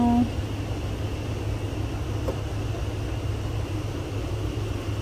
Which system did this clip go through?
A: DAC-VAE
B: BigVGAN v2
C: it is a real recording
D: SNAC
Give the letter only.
C